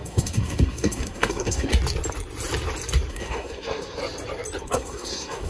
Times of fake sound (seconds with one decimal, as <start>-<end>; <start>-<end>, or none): 0.0-1.7; 3.1-4.0; 4.6-5.5